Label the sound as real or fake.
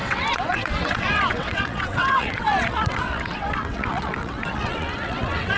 fake